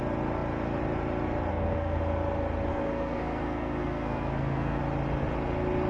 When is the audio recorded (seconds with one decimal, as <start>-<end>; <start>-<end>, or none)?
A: 0.0-1.5; 2.0-2.7; 4.8-5.9